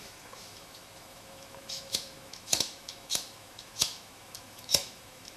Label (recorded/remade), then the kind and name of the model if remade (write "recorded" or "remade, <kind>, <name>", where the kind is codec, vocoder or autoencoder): remade, autoencoder, DAC-VAE